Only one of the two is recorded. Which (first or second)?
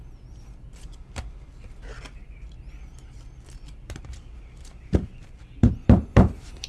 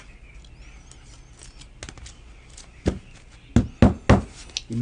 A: second